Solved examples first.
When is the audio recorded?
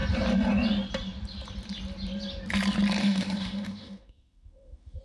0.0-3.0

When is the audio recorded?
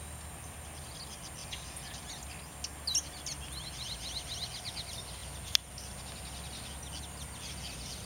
0.0-8.1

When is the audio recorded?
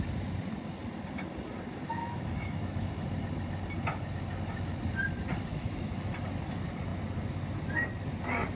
0.0-2.0; 2.9-5.5; 6.1-8.6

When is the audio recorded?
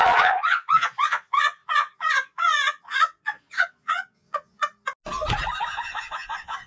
4.6-5.6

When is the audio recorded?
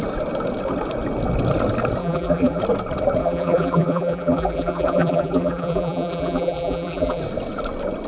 0.0-2.0; 2.6-3.2; 7.2-8.1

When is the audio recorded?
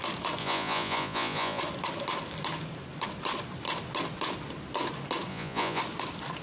0.0-0.4; 1.6-5.3; 5.8-6.4